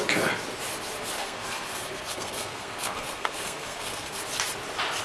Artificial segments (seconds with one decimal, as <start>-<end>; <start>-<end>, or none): 1.2-4.2